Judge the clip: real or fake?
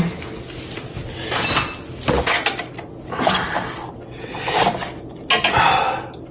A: real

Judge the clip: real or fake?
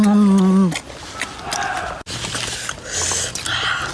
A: real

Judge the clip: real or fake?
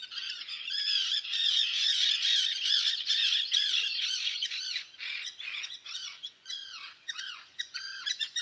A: fake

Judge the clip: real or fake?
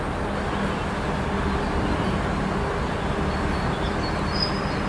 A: real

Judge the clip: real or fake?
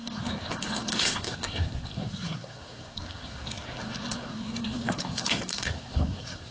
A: fake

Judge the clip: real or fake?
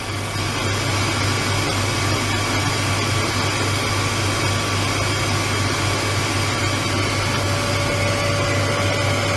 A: real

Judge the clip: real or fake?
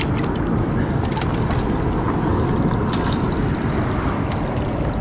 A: real